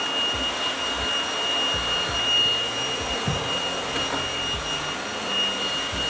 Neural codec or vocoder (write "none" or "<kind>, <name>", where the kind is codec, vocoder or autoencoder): none